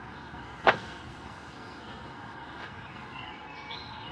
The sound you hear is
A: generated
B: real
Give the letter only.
A